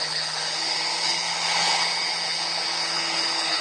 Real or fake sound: fake